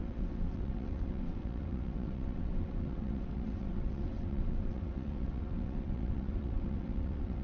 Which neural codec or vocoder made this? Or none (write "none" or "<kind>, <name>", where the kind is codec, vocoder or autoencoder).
vocoder, WaveNeXt